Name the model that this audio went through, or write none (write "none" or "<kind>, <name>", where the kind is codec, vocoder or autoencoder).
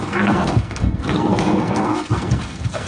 codec, SNAC